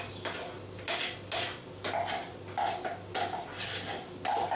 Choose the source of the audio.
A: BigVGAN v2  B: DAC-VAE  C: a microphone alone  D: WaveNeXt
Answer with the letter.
C